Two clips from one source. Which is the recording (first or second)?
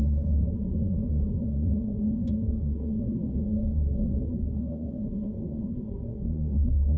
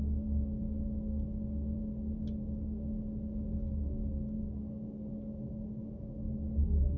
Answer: second